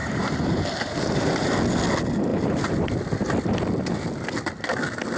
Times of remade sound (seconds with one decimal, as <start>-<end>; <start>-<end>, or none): 0.0-1.6; 2.3-2.9